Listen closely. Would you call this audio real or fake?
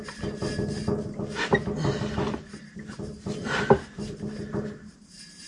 real